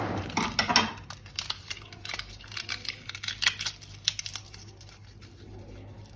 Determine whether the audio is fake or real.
real